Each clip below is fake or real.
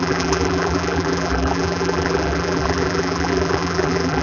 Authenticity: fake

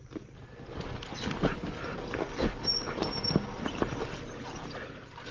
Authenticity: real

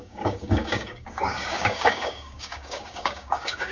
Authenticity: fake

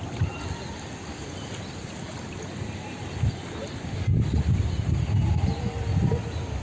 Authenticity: real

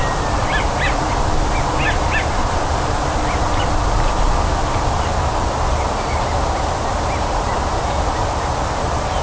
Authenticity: real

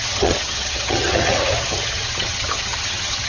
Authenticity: fake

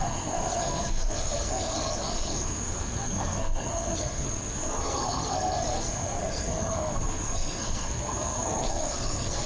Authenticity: fake